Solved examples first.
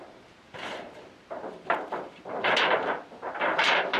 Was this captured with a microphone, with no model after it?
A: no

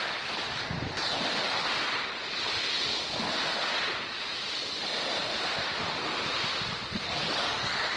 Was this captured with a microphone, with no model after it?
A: yes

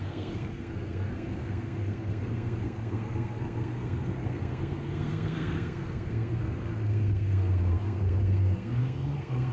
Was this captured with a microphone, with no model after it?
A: no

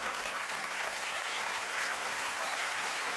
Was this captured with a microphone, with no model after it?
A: no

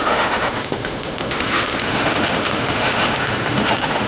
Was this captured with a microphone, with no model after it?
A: no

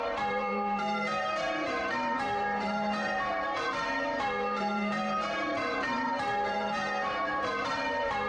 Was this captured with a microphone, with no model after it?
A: no